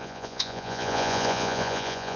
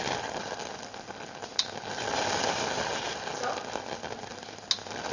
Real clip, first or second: second